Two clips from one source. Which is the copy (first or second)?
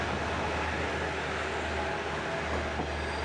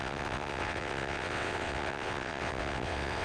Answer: second